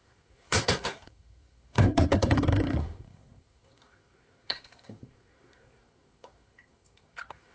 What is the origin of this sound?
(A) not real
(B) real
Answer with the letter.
A